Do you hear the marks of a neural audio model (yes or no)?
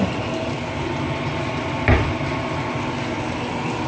no